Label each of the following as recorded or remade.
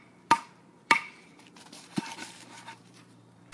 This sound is remade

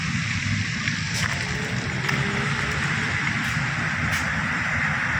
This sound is remade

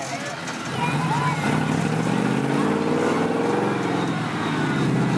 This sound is recorded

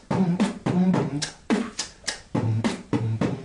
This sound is remade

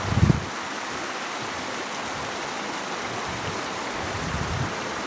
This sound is recorded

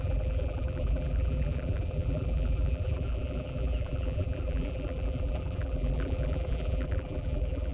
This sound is remade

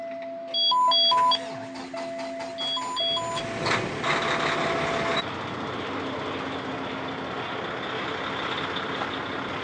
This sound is recorded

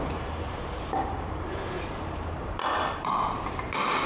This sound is remade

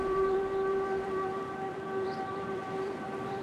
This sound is remade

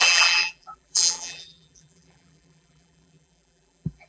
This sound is remade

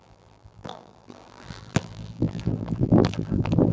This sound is remade